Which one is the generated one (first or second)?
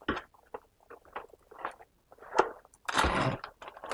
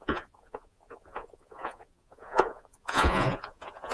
second